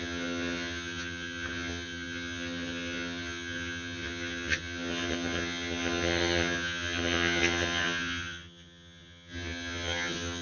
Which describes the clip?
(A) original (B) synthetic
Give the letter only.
B